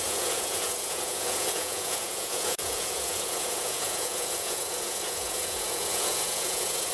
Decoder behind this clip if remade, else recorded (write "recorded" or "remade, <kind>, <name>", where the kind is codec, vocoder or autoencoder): remade, vocoder, Vocos